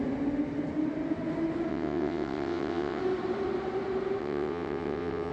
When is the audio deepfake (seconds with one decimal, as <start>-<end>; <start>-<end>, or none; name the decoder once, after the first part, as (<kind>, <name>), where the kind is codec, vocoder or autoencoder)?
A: 1.7-3.0 (vocoder, WaveNeXt); 4.2-5.3